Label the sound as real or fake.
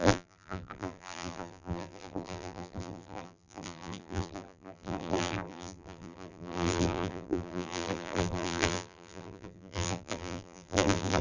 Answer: fake